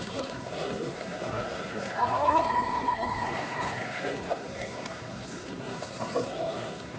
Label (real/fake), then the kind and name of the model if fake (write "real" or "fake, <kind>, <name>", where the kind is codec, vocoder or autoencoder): fake, codec, SNAC